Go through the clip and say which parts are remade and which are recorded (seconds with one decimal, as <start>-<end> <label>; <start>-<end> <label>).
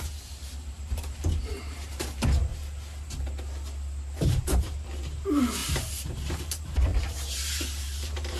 0.0-2.5 remade; 2.5-4.1 recorded; 4.1-8.4 remade